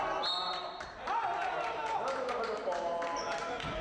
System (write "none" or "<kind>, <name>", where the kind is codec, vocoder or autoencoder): none